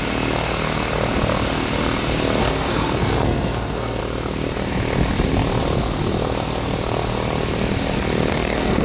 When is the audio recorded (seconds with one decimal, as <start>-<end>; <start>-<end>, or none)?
0.0-2.4; 4.0-8.3

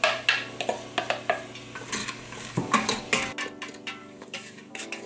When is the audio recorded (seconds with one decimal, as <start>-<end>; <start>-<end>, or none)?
0.0-2.0; 3.0-4.0

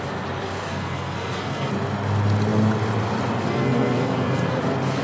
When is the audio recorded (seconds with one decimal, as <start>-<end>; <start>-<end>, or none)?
0.0-0.7; 1.7-3.5; 4.6-5.0

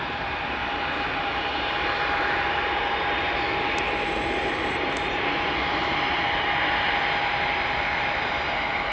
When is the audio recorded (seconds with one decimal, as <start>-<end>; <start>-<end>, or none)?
0.6-1.1

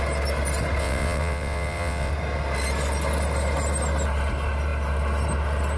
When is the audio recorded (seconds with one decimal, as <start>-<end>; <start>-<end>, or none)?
0.0-0.8; 2.1-5.8